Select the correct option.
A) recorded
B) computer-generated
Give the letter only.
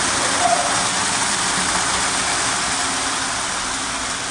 A